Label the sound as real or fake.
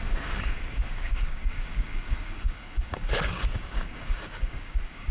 fake